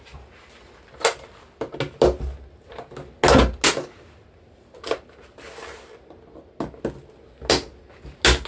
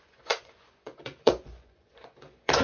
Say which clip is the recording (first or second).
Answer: first